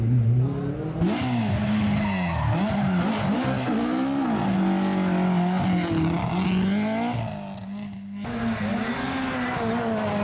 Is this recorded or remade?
recorded